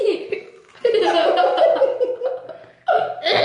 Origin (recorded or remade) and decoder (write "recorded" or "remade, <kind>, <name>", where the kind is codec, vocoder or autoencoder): recorded